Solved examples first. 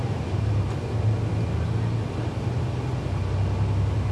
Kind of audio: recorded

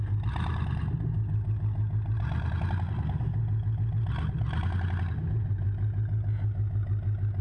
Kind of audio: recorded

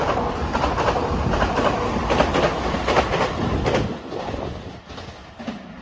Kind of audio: recorded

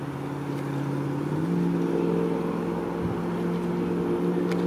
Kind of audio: recorded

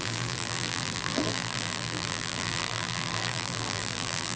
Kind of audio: remade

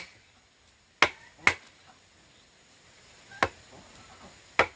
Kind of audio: recorded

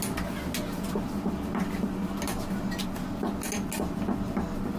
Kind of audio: recorded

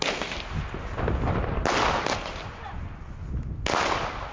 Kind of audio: recorded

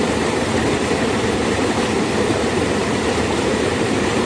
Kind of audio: remade